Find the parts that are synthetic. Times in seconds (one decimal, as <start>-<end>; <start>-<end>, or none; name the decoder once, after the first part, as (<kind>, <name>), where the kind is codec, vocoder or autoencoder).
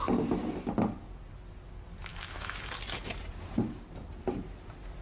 2.1-2.7 (autoencoder, DAC-VAE)